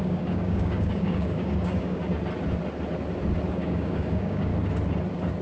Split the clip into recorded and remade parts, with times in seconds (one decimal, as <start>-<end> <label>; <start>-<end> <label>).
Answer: 0.0-2.0 remade; 2.0-3.5 recorded; 3.5-4.5 remade; 4.5-5.4 recorded